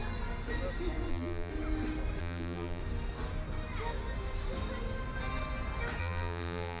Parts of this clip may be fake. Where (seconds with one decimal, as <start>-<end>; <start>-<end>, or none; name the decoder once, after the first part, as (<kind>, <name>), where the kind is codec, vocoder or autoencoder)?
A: 1.1-1.5 (vocoder, BigVGAN v2); 2.2-2.8; 6.0-6.8